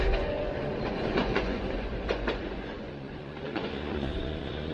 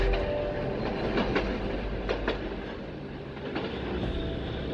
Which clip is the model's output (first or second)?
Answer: first